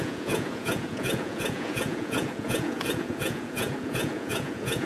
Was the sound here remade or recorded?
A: remade